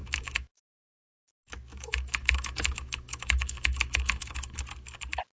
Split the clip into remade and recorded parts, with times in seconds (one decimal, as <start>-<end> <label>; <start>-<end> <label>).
0.0-0.6 remade; 0.6-1.7 recorded; 1.7-4.6 remade; 4.6-5.4 recorded